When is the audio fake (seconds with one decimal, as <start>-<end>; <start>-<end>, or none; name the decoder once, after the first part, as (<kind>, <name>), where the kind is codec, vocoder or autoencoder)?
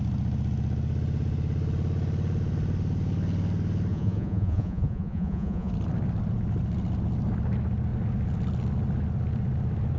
3.9-5.7 (vocoder, Vocos)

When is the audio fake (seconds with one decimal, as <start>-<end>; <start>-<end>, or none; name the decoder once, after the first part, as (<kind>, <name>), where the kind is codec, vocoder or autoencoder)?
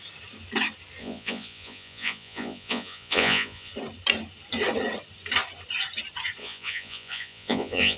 1.0-3.7 (vocoder, Vocos); 6.4-8.0